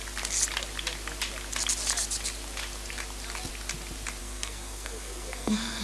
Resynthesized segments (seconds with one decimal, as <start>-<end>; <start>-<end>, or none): 4.2-5.8